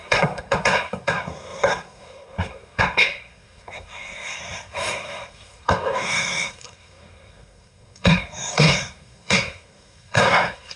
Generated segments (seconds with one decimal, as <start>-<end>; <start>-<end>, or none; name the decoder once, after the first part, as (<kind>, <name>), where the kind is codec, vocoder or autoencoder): 0.0-10.8 (codec, SNAC)